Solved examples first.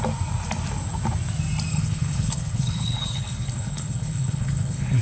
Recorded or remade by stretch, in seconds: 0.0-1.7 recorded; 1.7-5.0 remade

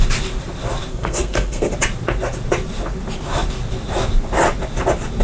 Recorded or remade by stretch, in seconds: 0.0-0.9 recorded; 0.9-1.7 remade; 1.7-5.2 recorded

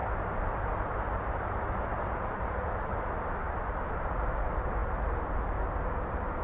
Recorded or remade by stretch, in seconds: 0.0-6.4 recorded